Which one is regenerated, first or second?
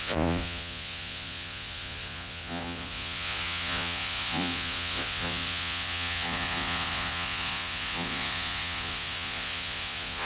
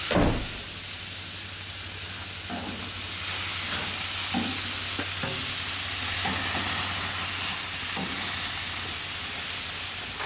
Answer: first